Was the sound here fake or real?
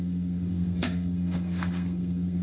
fake